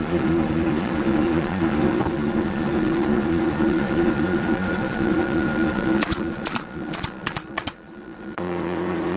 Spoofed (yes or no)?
yes